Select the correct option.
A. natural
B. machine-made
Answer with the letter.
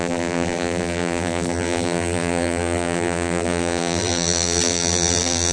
B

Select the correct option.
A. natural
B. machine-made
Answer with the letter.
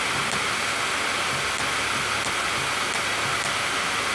A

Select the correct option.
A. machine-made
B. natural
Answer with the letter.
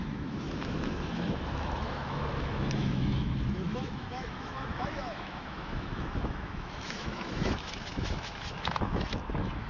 A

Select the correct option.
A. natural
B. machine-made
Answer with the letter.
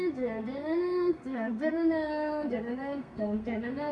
B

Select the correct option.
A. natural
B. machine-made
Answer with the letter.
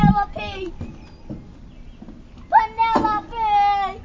A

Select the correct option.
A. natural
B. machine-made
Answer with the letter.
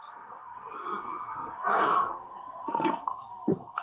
B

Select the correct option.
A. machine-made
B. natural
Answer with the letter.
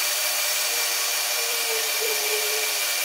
A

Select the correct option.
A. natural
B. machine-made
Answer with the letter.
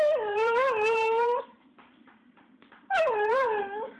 B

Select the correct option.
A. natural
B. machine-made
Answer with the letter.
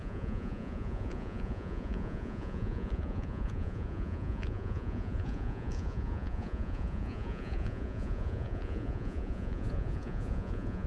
B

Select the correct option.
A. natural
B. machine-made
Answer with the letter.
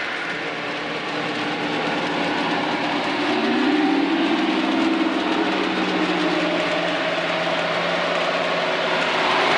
A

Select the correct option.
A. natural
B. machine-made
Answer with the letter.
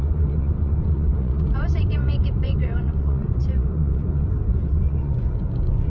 B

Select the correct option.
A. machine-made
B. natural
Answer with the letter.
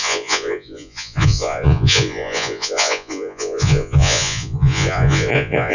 A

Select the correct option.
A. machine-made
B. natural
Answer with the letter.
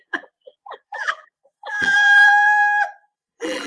A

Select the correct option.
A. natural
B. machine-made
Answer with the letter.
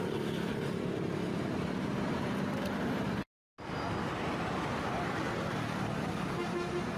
A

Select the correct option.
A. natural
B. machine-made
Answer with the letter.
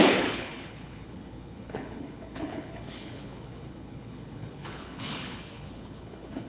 B